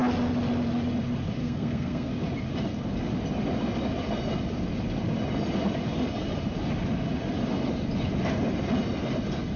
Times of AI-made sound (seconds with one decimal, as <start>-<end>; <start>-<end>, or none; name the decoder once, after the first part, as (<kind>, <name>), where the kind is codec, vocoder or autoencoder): 1.4-2.1 (codec, SNAC)